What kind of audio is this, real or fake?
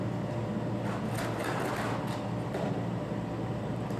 real